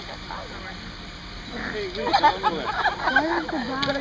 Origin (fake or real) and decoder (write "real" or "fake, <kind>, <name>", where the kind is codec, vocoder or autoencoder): real